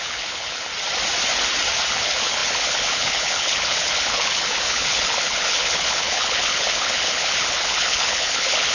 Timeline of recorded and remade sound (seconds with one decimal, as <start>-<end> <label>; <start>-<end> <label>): 0.0-0.7 remade; 0.7-1.9 recorded; 1.9-8.7 remade